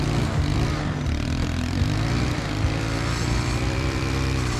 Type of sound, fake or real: fake